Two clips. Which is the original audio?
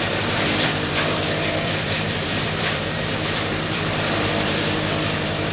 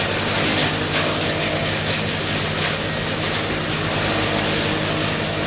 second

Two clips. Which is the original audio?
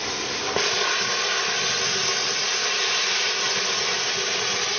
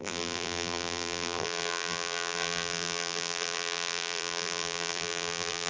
first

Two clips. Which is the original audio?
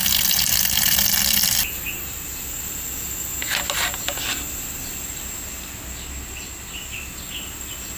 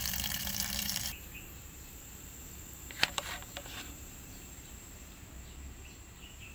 first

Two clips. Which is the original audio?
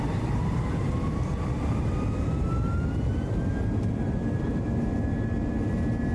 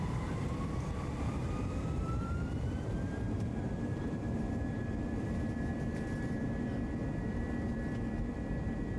first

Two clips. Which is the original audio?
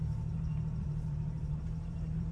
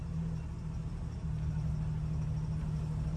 second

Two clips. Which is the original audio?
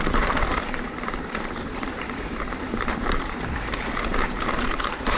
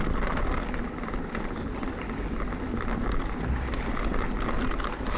second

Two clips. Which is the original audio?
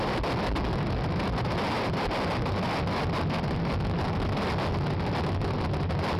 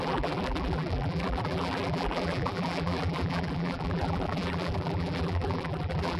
first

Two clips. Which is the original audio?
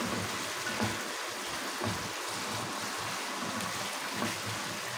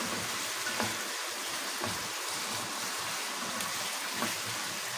first